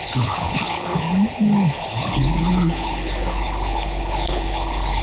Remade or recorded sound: remade